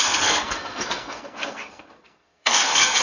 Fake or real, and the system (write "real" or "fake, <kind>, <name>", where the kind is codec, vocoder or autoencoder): fake, codec, SNAC